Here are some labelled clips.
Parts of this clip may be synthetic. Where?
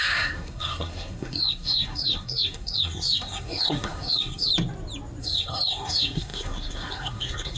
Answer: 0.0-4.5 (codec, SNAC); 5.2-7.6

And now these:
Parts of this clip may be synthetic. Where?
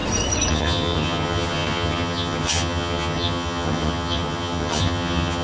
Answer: 0.5-5.4 (vocoder, HiFi-GAN)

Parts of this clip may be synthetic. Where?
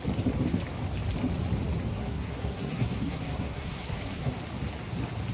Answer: 1.9-4.3 (codec, SNAC)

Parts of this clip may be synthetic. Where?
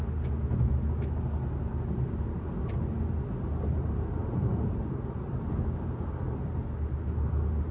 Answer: 4.2-4.9 (vocoder, BigVGAN v2)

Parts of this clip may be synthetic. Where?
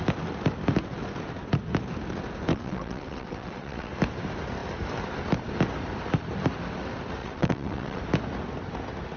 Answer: 2.5-3.9 (vocoder, WaveNeXt); 7.2-8.0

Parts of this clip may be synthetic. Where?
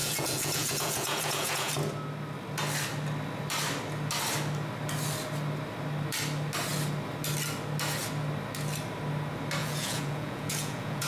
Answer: 0.0-1.7 (vocoder, Vocos); 9.6-11.1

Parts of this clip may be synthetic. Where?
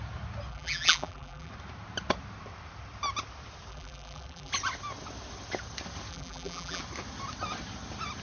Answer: 0.5-1.5 (vocoder, BigVGAN v2); 3.7-4.5; 6.1-6.8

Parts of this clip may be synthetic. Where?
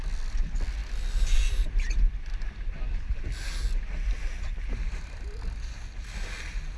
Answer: none